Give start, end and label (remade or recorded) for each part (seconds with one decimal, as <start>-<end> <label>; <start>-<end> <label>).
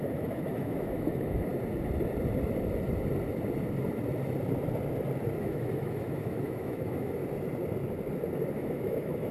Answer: 0.0-1.5 remade; 1.5-5.4 recorded; 5.4-7.2 remade; 7.2-8.5 recorded; 8.5-9.3 remade